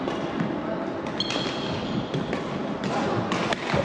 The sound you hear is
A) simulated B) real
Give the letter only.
B